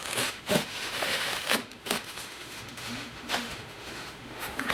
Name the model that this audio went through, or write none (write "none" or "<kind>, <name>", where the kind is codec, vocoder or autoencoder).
autoencoder, DAC-VAE